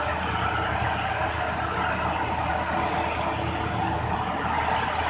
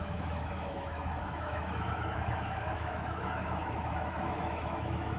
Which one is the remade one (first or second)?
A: second